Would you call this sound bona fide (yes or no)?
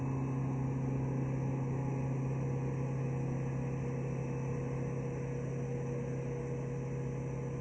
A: yes